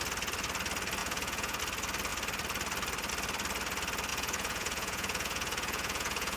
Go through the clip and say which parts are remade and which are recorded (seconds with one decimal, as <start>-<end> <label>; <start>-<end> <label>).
0.0-1.0 recorded; 1.0-1.6 remade; 1.6-4.1 recorded; 4.1-6.4 remade